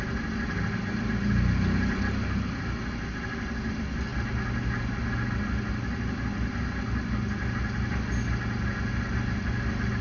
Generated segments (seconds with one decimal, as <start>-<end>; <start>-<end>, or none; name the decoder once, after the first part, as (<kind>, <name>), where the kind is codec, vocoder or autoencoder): none